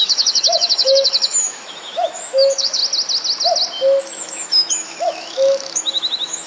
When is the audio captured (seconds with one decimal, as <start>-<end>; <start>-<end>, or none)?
2.8-4.0